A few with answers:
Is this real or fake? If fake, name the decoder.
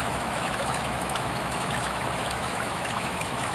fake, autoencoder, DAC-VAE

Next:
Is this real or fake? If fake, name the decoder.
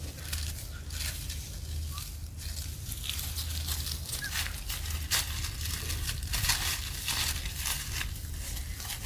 real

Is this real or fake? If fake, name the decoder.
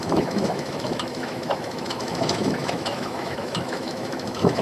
fake, autoencoder, DAC-VAE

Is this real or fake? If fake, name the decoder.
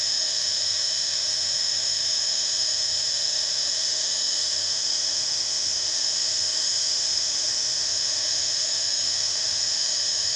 fake, autoencoder, DAC-VAE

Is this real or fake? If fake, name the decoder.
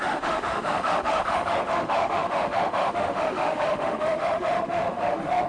fake, autoencoder, DAC-VAE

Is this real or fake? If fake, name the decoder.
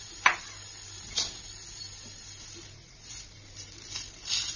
real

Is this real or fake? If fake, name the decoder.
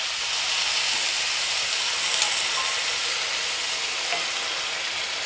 real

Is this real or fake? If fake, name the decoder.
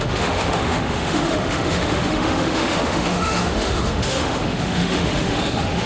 fake, autoencoder, DAC-VAE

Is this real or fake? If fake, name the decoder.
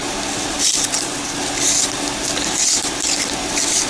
real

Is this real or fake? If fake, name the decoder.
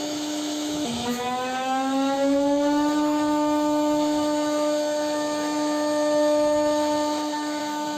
fake, autoencoder, DAC-VAE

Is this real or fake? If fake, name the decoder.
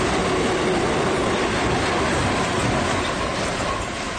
real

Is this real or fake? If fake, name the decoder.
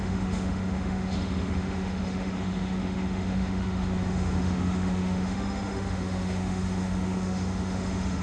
fake, autoencoder, DAC-VAE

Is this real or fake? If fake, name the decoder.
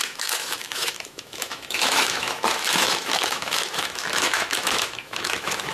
fake, autoencoder, DAC-VAE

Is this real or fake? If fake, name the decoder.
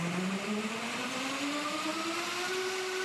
real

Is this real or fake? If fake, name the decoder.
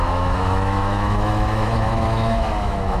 fake, autoencoder, DAC-VAE